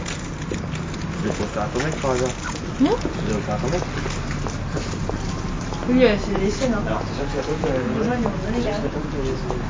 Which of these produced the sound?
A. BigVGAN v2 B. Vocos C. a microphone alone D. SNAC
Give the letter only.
C